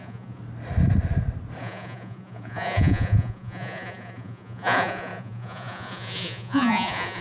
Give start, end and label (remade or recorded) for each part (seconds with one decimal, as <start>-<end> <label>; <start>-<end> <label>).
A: 0.0-0.4 remade; 0.4-1.6 recorded; 1.6-7.2 remade